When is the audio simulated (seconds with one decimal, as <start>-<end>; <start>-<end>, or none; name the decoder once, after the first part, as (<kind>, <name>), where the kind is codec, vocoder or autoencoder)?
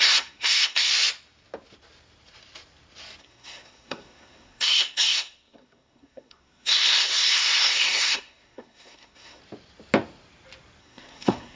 0.0-0.9 (codec, SNAC); 3.2-9.4; 10.8-11.6